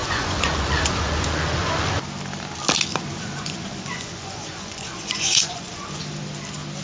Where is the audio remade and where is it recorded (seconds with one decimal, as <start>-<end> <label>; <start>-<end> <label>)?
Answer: 0.0-1.7 remade; 1.7-2.9 recorded; 2.9-6.0 remade; 6.0-6.8 recorded